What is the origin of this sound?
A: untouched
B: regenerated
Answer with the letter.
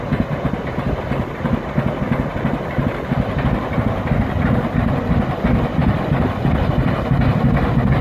A